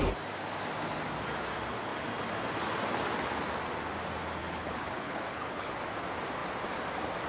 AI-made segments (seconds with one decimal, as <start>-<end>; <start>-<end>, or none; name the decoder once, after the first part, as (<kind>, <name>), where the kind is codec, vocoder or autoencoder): 4.4-5.7 (codec, HILCodec)